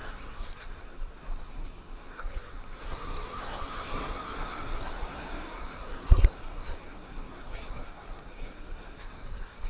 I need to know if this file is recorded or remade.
remade